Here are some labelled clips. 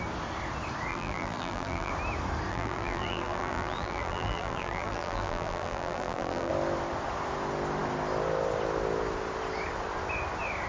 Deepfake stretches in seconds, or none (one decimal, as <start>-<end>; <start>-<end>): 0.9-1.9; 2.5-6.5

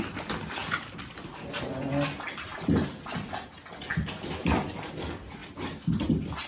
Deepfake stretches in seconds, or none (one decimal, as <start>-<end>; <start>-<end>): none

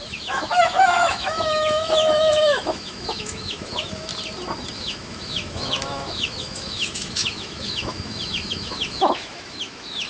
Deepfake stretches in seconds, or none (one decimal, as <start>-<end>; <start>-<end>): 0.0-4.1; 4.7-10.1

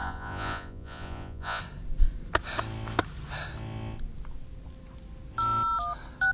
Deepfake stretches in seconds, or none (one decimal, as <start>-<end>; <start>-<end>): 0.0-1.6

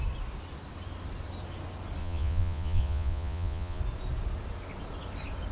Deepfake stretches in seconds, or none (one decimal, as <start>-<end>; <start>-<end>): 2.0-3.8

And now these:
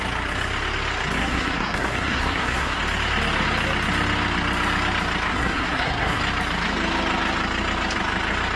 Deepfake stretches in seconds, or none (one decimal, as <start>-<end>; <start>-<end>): 1.2-2.8; 5.3-6.2